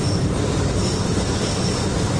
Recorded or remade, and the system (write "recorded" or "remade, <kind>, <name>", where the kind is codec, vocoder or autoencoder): remade, vocoder, BigVGAN v2